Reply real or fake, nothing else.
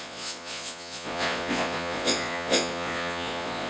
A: fake